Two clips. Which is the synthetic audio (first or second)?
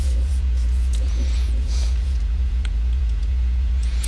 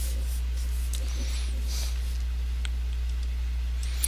first